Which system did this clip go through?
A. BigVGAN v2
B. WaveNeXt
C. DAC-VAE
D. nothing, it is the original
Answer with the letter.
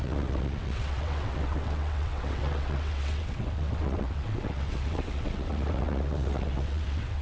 B